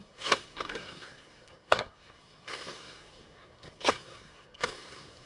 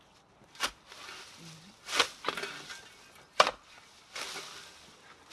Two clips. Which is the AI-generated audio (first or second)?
first